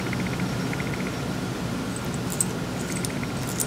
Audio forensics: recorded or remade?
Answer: recorded